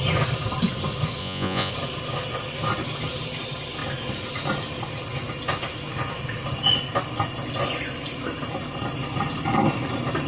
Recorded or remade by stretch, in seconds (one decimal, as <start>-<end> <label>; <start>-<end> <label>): 0.0-1.2 recorded; 1.2-1.7 remade; 1.7-10.3 recorded